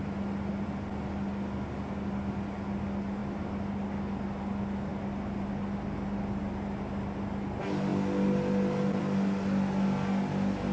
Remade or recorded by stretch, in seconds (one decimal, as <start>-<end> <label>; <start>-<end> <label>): 0.0-10.7 recorded